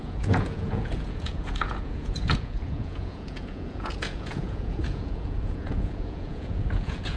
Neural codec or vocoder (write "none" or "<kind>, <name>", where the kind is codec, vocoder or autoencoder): vocoder, Vocos